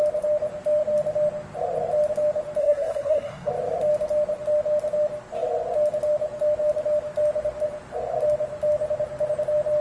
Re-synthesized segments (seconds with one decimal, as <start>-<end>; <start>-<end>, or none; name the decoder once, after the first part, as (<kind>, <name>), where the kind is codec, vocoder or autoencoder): 2.6-3.5 (codec, SNAC)